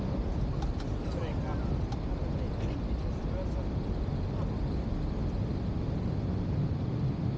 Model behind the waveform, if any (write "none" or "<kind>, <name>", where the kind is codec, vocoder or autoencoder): none